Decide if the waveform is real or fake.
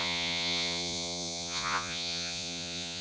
fake